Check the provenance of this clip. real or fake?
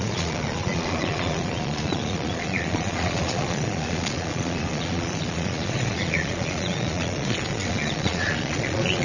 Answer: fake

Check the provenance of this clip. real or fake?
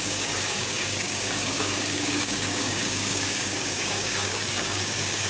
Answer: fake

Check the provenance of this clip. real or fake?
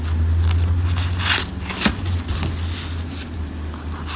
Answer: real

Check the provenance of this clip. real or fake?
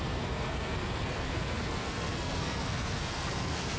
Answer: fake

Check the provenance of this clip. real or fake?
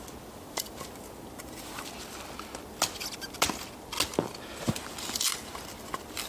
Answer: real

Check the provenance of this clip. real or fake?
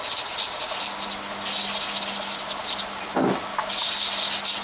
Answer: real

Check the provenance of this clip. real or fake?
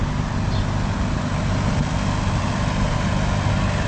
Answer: real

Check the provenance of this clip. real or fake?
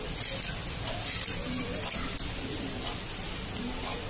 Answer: real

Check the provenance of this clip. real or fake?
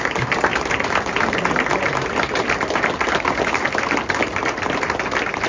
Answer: real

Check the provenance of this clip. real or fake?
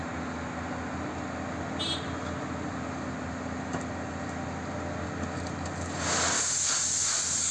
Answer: real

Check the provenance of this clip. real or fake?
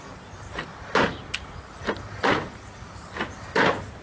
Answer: real